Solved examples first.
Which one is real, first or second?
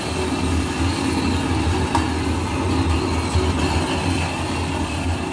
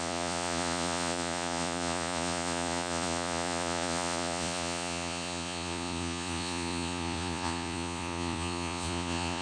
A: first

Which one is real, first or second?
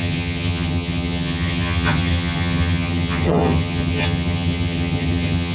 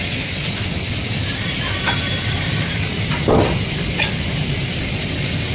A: second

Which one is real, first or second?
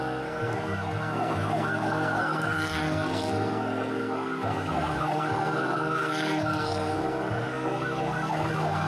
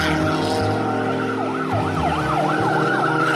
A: second